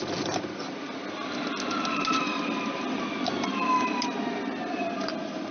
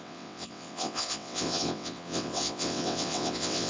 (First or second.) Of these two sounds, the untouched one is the first